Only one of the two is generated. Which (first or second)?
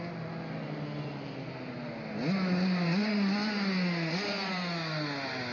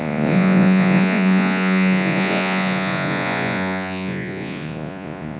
second